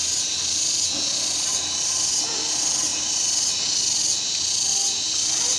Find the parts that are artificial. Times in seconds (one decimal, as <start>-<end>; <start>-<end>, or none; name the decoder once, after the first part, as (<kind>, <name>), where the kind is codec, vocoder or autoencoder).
1.5-2.4 (vocoder, BigVGAN v2); 2.9-3.6; 4.7-5.6